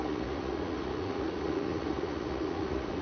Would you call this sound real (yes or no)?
no